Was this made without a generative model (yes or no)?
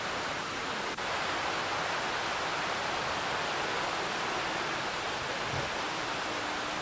yes